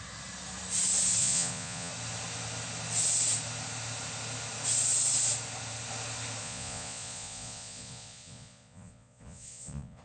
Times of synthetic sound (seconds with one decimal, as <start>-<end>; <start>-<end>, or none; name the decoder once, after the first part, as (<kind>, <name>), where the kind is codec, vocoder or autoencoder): 1.2-1.9 (vocoder, Vocos); 6.4-10.0